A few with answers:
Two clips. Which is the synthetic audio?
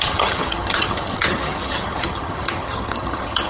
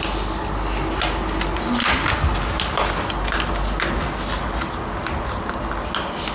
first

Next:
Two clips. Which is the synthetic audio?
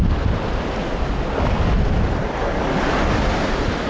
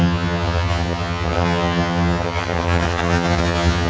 second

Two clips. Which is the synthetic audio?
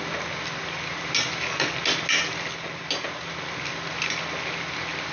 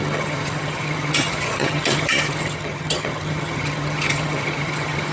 second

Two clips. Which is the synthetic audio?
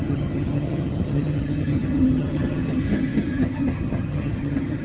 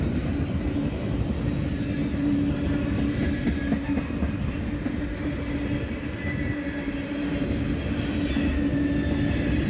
first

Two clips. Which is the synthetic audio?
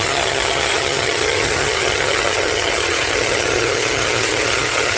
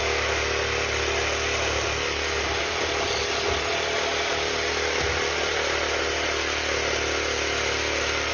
first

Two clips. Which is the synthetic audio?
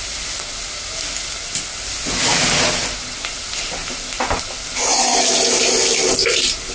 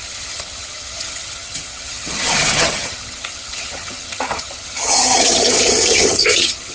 second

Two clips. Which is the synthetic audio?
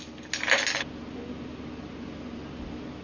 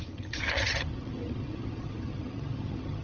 second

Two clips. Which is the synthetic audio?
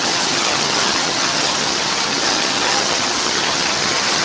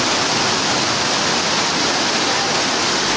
first